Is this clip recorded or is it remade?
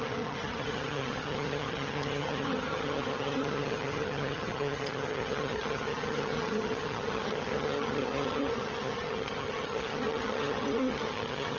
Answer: remade